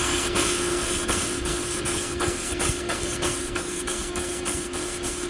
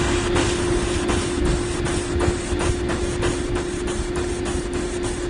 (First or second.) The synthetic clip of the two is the first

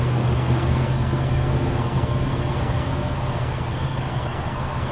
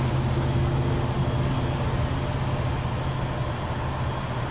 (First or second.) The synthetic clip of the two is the first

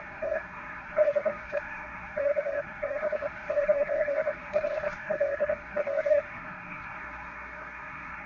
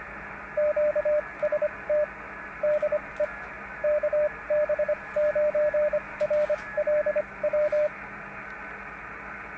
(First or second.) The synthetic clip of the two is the first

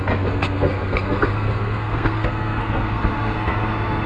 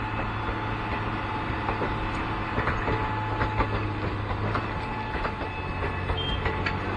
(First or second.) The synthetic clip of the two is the first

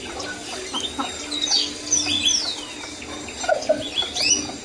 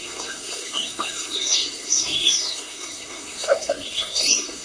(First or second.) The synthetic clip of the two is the second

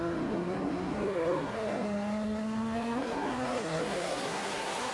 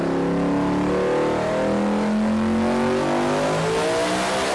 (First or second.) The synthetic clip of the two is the first